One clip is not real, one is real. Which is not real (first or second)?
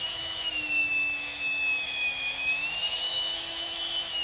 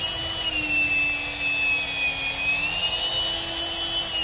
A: first